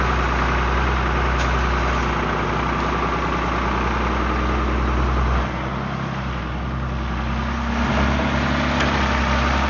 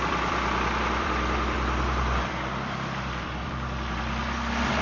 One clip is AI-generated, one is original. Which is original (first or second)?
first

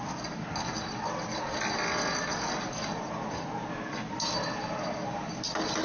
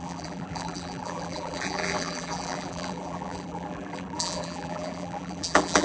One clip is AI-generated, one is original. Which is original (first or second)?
first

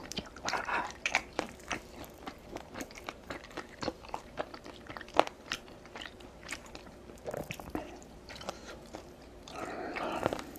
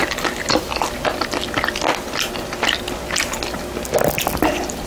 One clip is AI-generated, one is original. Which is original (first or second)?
second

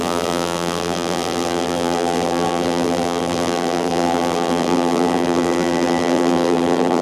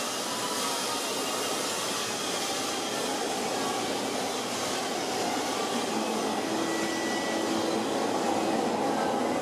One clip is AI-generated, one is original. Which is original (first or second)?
second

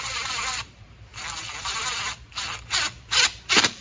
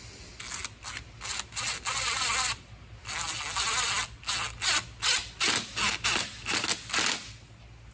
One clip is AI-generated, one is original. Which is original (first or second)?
second